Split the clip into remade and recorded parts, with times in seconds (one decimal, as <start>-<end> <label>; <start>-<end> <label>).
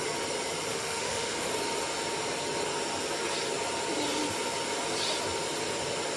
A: 0.0-0.7 recorded; 0.7-1.5 remade; 1.5-6.2 recorded